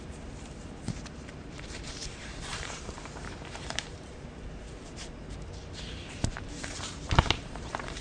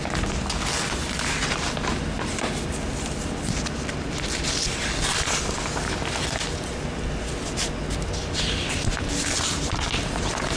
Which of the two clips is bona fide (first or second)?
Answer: second